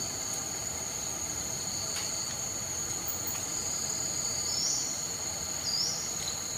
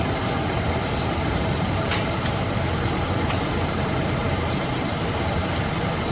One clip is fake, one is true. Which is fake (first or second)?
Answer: second